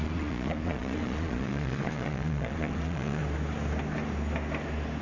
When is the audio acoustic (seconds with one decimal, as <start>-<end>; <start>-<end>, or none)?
3.2-5.0